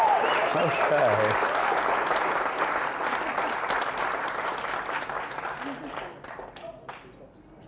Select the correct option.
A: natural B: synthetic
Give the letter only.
A